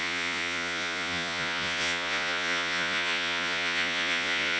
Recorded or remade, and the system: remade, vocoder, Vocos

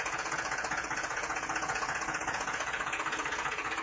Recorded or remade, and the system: remade, vocoder, Vocos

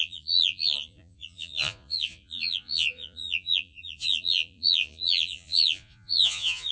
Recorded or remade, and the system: remade, vocoder, Vocos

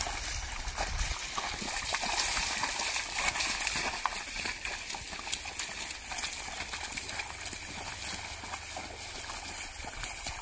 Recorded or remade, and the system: recorded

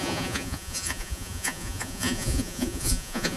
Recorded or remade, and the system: remade, vocoder, Vocos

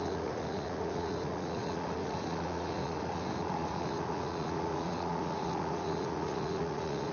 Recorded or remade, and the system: remade, vocoder, Vocos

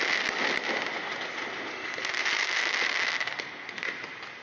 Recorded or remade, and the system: recorded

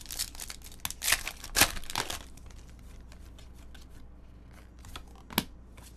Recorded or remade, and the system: recorded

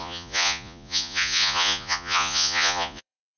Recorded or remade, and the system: remade, vocoder, Vocos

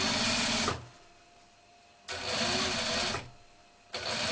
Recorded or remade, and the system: recorded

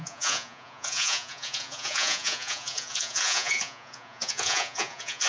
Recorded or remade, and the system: remade, vocoder, Vocos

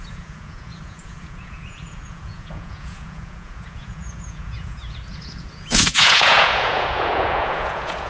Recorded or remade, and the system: remade, vocoder, Vocos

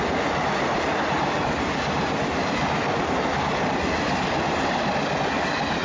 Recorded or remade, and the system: recorded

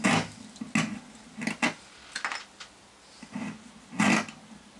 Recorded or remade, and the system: recorded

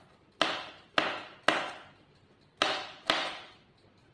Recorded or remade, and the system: recorded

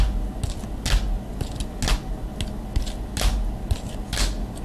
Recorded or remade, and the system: recorded